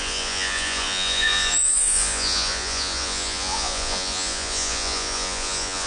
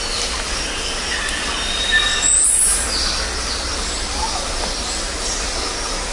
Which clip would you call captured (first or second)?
second